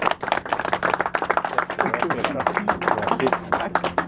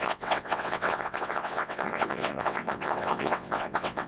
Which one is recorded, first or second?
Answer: first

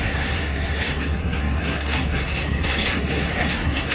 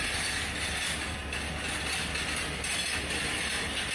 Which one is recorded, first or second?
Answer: second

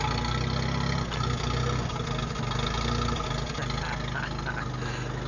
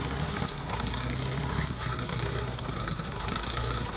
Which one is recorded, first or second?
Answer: first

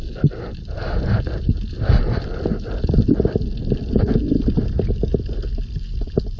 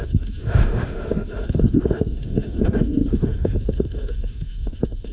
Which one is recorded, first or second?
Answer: first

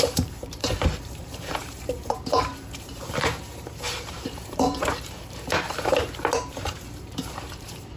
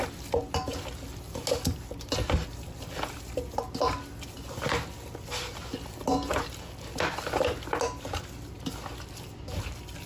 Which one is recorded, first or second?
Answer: second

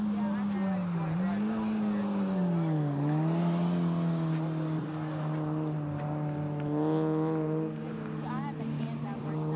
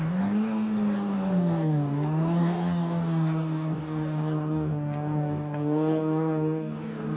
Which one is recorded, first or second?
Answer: first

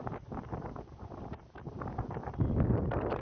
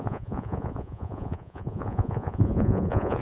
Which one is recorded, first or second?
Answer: first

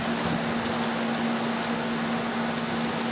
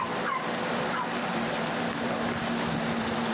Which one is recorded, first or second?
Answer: first